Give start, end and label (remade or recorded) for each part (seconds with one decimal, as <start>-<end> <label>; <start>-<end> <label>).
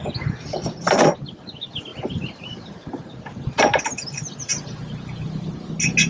0.0-1.9 recorded; 1.9-3.1 remade; 3.1-6.1 recorded